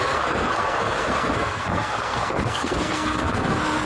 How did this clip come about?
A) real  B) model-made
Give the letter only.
B